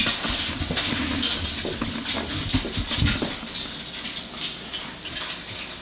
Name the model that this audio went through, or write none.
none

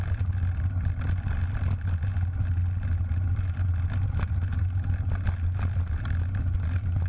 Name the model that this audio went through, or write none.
none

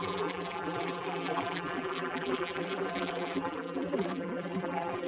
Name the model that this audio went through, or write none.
vocoder, BigVGAN v2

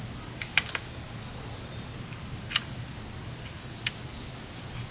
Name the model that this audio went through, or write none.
none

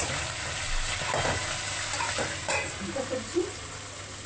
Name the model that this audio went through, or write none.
none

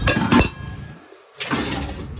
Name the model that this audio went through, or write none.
none